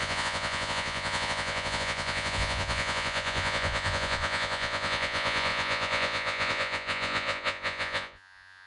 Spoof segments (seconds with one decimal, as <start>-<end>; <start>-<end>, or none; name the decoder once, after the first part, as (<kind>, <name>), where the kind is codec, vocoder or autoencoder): 0.0-8.7 (vocoder, Vocos)